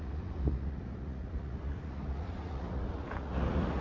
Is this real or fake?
fake